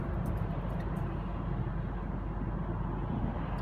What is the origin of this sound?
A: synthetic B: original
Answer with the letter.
B